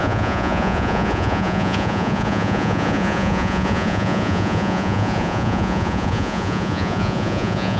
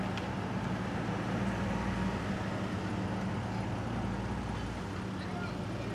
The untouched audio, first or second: second